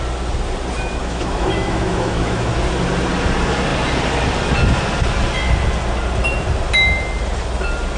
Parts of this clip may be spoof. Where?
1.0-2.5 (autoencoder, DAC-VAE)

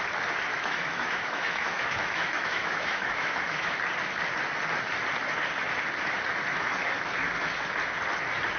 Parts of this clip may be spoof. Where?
0.5-3.8 (autoencoder, DAC-VAE)

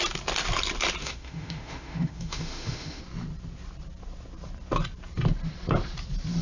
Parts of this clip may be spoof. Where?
1.0-3.0 (autoencoder, DAC-VAE)

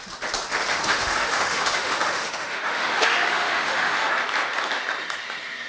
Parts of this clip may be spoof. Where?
0.7-4.1 (autoencoder, DAC-VAE)